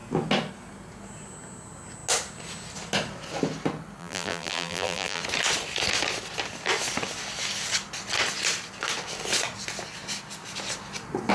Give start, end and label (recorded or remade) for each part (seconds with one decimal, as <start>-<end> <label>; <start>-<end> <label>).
0.0-4.0 recorded; 4.0-5.2 remade; 5.2-11.3 recorded